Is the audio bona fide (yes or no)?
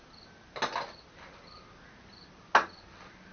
yes